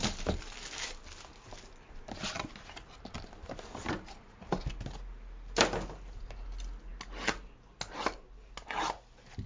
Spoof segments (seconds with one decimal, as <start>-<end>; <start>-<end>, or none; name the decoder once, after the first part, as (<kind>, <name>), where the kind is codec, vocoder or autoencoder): none